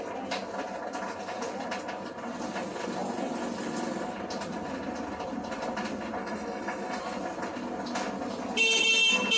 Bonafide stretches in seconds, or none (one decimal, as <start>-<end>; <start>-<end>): 0.0-6.2; 7.0-9.4